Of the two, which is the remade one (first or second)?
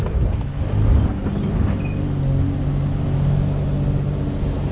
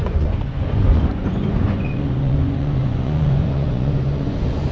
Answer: second